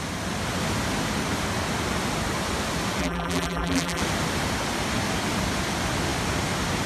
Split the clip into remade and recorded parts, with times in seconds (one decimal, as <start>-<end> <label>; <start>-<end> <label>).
0.0-3.0 recorded; 3.0-4.0 remade; 4.0-6.9 recorded